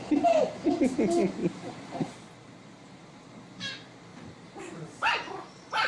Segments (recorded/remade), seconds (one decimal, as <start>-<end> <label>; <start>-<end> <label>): 0.0-1.4 recorded; 1.4-3.0 remade; 3.0-4.1 recorded; 4.1-5.9 remade